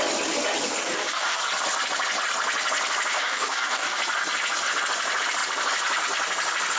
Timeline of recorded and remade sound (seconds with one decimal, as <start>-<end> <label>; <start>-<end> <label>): 0.0-0.8 recorded; 0.8-1.4 remade; 1.4-3.1 recorded; 3.1-4.0 remade; 4.0-6.8 recorded